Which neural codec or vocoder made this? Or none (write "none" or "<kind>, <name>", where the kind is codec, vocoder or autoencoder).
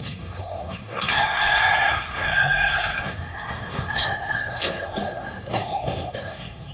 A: codec, SNAC